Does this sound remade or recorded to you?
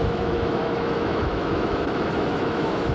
remade